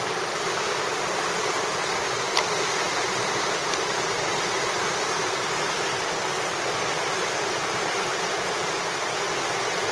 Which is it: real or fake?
fake